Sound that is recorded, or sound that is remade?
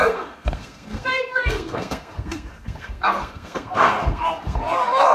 remade